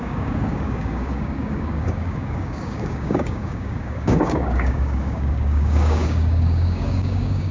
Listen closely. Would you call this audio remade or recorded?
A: remade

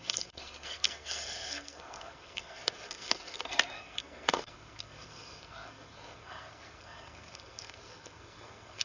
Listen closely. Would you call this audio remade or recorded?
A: remade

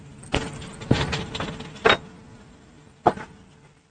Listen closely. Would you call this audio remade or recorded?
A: recorded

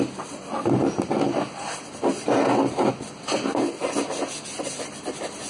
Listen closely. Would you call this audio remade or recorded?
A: recorded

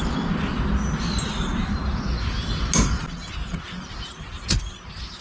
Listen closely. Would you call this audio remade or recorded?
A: recorded